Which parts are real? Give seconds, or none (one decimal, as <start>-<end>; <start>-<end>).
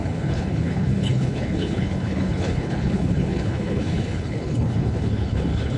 none